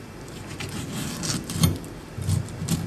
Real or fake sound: real